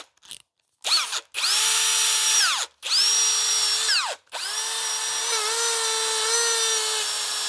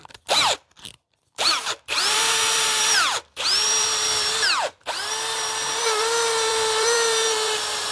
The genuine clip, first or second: first